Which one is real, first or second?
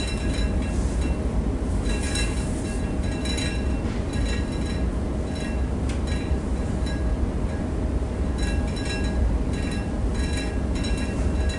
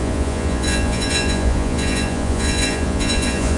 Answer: first